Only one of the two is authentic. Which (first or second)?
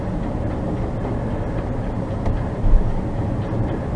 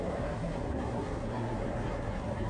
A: first